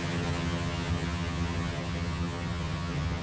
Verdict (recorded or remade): remade